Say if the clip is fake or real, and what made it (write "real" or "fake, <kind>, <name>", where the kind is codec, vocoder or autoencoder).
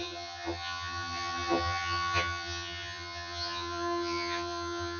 fake, vocoder, HiFi-GAN